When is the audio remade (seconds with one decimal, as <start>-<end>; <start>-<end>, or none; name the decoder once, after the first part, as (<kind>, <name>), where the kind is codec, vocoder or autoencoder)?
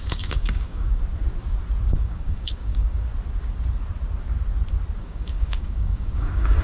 0.0-1.0 (codec, DAC); 1.9-3.1; 5.0-6.6